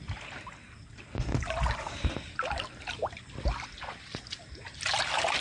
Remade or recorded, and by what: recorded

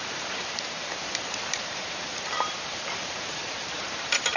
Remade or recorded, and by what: remade, vocoder, BigVGAN v2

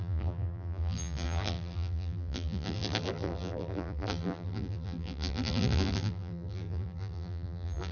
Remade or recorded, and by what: remade, vocoder, BigVGAN v2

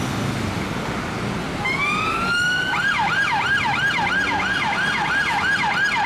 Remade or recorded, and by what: recorded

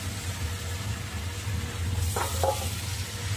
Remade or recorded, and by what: recorded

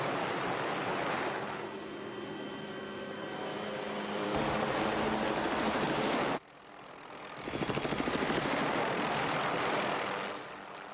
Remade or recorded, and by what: remade, vocoder, BigVGAN v2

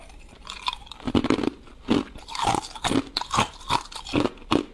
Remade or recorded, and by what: recorded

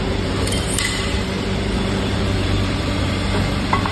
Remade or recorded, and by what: remade, vocoder, BigVGAN v2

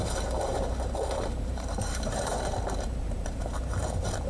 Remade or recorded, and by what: remade, vocoder, BigVGAN v2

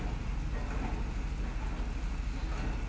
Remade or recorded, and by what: recorded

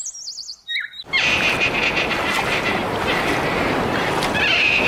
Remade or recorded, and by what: recorded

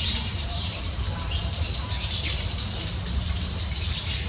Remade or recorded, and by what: remade, vocoder, BigVGAN v2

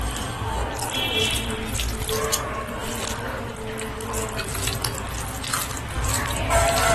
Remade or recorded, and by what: recorded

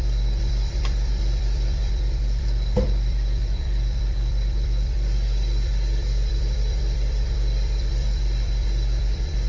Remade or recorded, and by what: remade, vocoder, BigVGAN v2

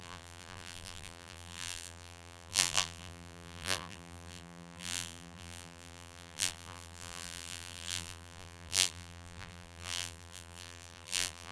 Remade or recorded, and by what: remade, vocoder, BigVGAN v2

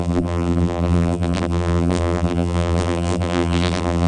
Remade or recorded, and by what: remade, vocoder, BigVGAN v2